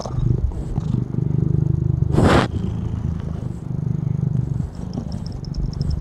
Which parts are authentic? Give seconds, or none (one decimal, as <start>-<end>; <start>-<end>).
0.0-6.0